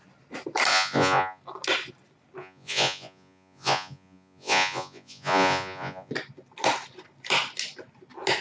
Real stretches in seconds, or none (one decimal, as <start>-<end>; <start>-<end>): 0.0-0.7; 1.4-2.4; 6.1-8.4